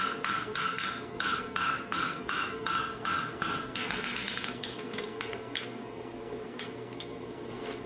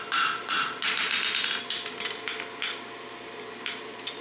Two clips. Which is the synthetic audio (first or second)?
first